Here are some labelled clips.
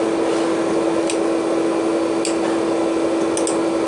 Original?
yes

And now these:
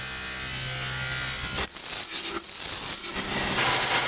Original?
yes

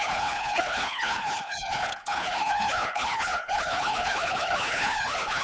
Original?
no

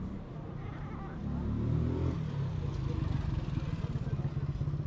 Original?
yes